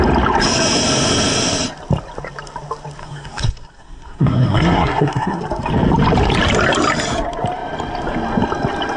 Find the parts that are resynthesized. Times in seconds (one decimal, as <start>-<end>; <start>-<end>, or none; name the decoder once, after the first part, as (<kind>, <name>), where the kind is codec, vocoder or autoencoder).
3.0-5.4 (codec, SNAC)